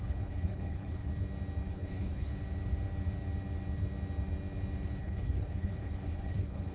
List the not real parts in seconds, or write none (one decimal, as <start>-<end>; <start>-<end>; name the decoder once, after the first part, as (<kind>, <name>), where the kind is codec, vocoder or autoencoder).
0.0-1.1 (codec, HILCodec); 1.7-2.3; 5.0-6.7